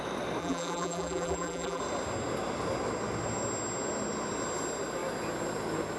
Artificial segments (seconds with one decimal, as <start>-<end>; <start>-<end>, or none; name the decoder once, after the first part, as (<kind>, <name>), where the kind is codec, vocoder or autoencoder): 0.4-1.8 (vocoder, BigVGAN v2)